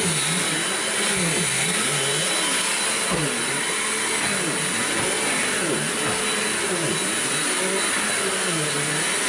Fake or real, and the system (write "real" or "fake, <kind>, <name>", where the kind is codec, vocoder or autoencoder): real